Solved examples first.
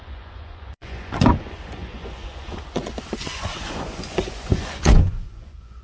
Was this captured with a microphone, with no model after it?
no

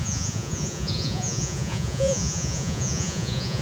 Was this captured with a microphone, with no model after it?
no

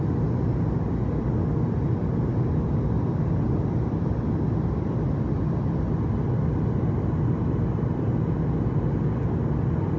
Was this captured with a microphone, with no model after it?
yes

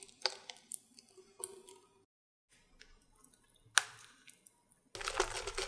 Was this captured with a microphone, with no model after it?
yes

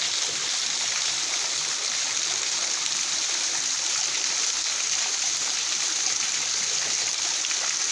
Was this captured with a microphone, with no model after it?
yes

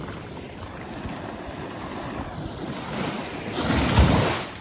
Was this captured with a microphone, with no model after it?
yes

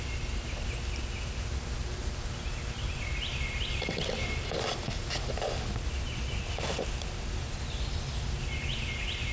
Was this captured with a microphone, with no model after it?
yes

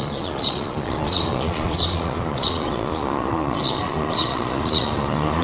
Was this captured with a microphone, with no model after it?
no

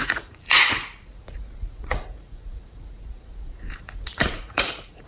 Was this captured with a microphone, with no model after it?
no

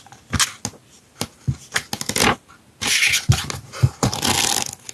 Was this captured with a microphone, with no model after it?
yes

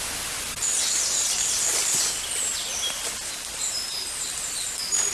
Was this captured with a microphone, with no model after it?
yes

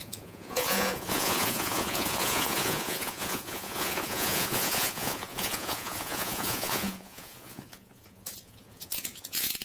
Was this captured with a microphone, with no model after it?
no